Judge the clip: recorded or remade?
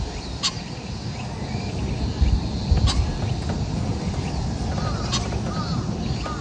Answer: recorded